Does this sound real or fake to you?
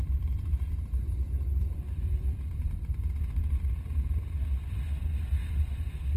fake